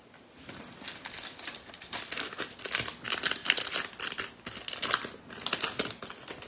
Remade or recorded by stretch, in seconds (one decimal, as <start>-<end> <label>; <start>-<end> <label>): 0.0-6.5 recorded